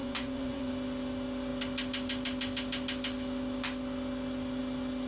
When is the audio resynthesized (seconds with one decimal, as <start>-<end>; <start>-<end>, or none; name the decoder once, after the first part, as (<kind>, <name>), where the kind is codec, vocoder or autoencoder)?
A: 0.0-0.7 (vocoder, Vocos)